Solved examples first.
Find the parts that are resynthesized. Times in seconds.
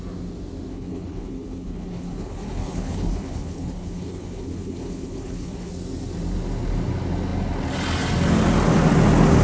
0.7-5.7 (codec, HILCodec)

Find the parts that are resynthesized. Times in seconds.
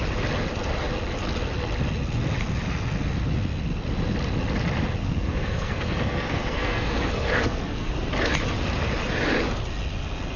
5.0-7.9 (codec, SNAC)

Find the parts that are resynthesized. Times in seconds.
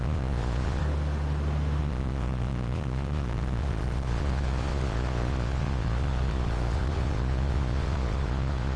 0.0-0.8 (vocoder, Vocos); 1.8-8.8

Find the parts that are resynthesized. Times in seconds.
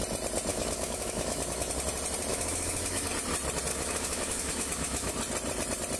0.5-1.7 (autoencoder, DAC-VAE); 2.3-3.1; 3.7-5.1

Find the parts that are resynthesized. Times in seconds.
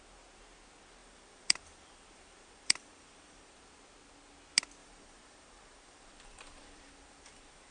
1.0-3.7 (vocoder, BigVGAN v2); 4.8-7.7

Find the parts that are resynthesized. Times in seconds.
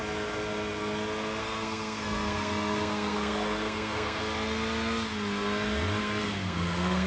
1.4-4.2 (codec, SNAC); 6.0-7.1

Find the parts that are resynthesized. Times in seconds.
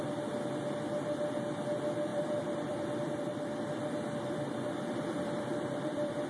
2.1-6.3 (vocoder, BigVGAN v2)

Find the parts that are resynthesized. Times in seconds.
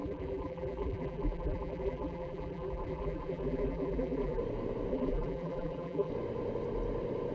0.0-4.4 (vocoder, BigVGAN v2); 4.9-6.1